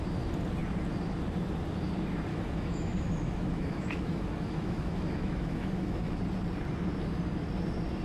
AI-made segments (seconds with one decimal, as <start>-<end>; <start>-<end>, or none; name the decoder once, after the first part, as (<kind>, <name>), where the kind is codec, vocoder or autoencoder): 2.3-6.2 (autoencoder, DAC-VAE)